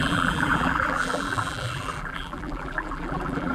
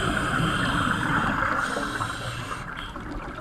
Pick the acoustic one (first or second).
second